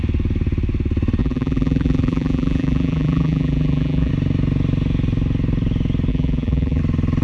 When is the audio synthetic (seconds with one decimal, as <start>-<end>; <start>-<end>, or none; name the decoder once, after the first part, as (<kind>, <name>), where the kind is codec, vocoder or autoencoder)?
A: 1.2-4.1 (vocoder, BigVGAN v2); 6.1-6.8